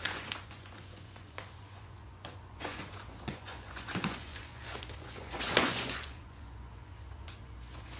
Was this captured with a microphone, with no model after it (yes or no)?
no